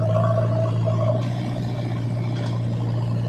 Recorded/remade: recorded